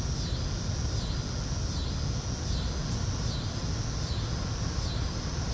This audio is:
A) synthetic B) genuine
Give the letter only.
B